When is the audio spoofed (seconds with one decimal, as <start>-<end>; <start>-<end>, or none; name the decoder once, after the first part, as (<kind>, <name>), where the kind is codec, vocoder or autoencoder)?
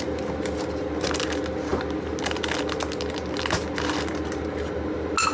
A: none